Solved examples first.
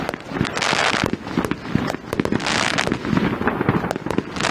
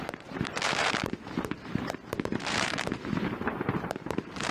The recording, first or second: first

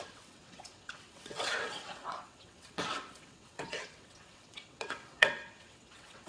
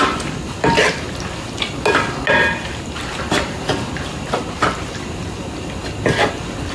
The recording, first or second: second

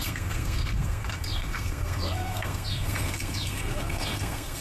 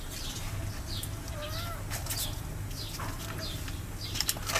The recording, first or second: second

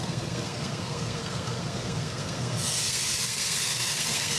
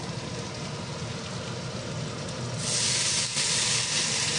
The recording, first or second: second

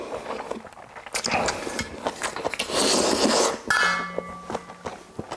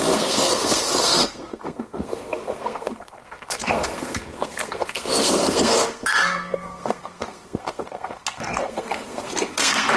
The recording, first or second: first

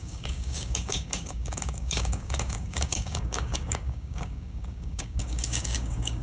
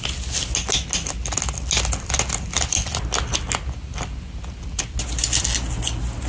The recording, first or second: second